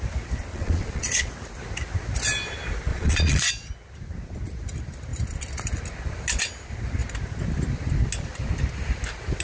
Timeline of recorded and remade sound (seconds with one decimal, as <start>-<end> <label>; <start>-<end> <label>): 0.0-0.5 recorded; 0.5-1.3 remade; 1.3-2.9 recorded; 2.9-3.5 remade; 3.5-9.4 recorded